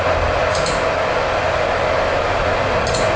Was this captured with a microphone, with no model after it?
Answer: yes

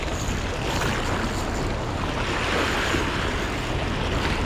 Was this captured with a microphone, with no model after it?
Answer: yes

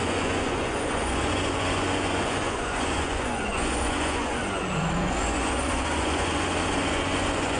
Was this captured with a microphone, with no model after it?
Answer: no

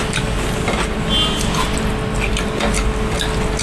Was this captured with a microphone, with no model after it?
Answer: yes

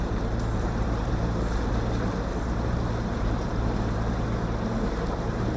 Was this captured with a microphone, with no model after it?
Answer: no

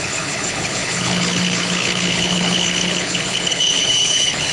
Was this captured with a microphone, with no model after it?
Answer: no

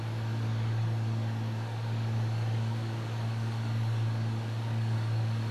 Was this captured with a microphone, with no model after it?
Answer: no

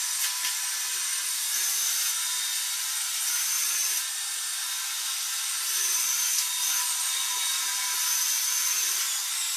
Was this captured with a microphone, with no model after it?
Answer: yes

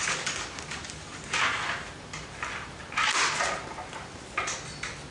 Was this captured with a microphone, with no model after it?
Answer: yes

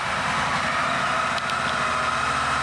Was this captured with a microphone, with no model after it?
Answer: yes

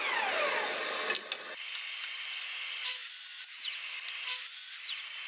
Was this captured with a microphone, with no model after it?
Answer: yes